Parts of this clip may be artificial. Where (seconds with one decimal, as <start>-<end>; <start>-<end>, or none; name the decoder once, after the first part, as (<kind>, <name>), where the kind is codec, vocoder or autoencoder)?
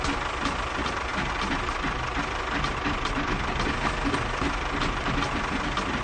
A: none